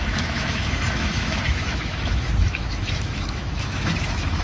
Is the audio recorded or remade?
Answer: remade